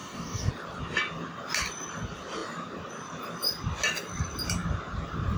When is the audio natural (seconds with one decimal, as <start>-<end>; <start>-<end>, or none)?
0.5-5.4